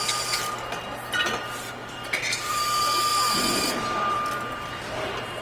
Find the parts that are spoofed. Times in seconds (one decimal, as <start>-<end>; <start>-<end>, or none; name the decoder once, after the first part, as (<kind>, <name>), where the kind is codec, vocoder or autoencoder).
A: 1.8-2.6 (vocoder, BigVGAN v2); 3.1-4.8